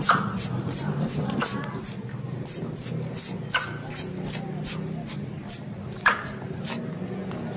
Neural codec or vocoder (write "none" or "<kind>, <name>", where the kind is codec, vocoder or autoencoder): none